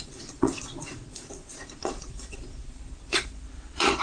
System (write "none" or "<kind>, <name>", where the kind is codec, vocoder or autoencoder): vocoder, Vocos